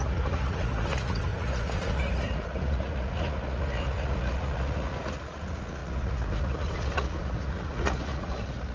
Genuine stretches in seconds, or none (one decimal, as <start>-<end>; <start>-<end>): none